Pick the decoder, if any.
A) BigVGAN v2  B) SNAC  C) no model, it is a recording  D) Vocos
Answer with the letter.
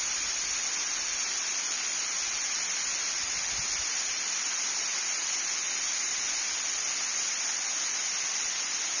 C